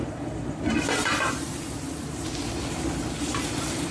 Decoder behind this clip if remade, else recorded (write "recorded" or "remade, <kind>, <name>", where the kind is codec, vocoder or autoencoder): remade, vocoder, BigVGAN v2